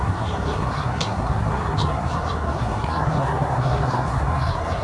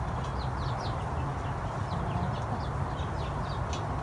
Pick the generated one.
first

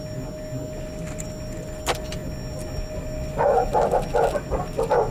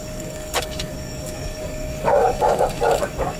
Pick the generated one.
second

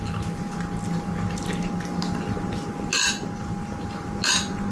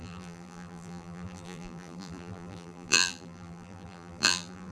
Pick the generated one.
second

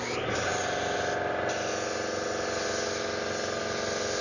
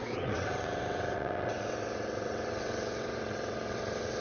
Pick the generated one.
second